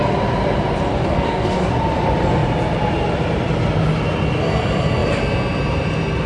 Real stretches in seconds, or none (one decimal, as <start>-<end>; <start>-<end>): 0.0-0.9; 1.7-6.3